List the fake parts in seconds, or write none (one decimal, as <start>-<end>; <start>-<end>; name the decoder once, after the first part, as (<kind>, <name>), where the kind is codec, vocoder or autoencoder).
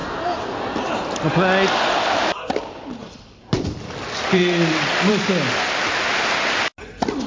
3.0-5.1 (vocoder, BigVGAN v2)